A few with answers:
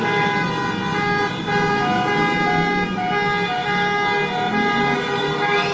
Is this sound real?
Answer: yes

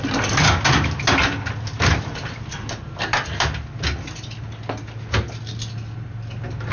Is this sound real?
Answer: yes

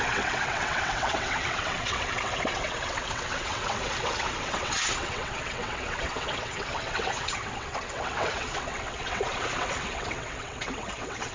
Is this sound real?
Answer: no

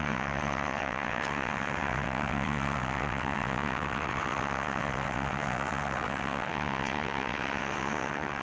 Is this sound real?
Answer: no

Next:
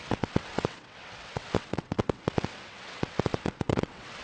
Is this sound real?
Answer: no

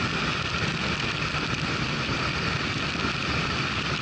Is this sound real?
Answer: yes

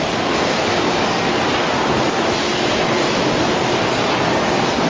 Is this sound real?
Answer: yes